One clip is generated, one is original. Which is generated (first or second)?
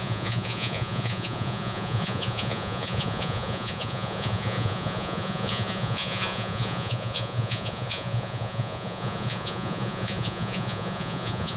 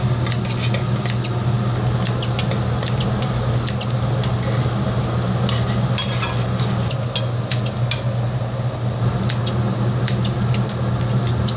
first